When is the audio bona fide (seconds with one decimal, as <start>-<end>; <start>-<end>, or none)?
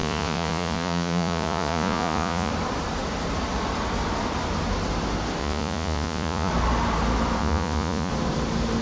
2.5-5.4; 6.5-7.4; 8.1-8.8